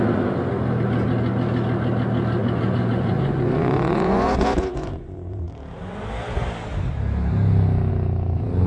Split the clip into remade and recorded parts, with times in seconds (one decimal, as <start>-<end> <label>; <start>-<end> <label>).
0.0-2.4 recorded; 2.4-5.5 remade; 5.5-8.7 recorded